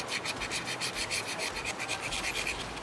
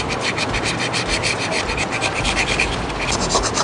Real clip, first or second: first